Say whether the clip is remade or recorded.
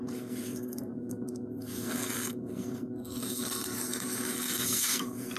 remade